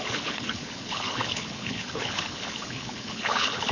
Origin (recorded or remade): remade